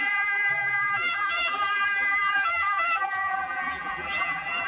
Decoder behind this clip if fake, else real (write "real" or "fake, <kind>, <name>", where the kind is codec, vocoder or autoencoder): fake, vocoder, BigVGAN v2